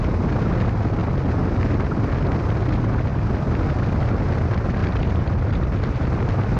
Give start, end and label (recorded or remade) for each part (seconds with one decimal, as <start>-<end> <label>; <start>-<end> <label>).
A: 0.0-4.8 recorded; 4.8-5.3 remade; 5.3-6.6 recorded